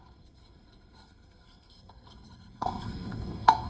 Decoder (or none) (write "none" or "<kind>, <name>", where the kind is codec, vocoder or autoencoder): codec, SNAC